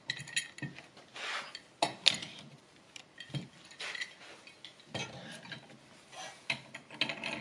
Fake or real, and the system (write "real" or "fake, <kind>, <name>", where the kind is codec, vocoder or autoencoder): real